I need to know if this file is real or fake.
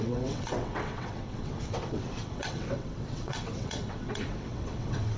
fake